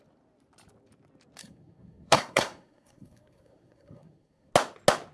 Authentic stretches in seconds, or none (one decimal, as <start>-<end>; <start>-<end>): 0.0-1.4; 4.5-5.1